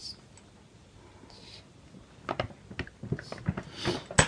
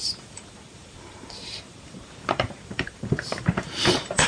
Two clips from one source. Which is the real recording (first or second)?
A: first